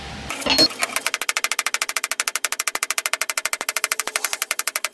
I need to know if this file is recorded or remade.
recorded